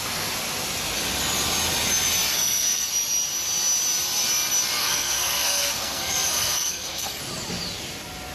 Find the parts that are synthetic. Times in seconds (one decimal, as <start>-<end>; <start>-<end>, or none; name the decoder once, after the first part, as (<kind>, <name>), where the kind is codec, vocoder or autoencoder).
2.3-2.9 (codec, SNAC); 4.8-7.2